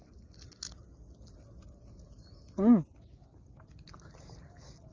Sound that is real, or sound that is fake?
real